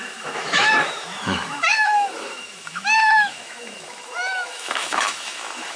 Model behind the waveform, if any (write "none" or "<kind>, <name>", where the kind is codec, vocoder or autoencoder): autoencoder, DAC-VAE